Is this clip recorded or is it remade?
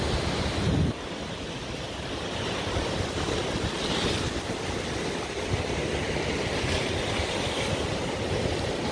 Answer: recorded